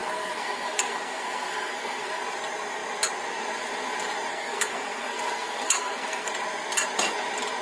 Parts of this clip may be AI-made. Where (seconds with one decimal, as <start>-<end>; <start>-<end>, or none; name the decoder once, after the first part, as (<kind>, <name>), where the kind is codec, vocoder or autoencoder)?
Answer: 0.0-2.2 (codec, SNAC); 4.3-6.3